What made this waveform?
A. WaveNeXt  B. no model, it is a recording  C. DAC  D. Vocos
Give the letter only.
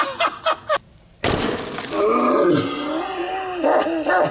B